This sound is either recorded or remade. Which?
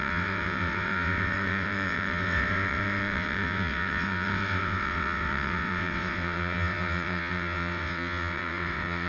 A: remade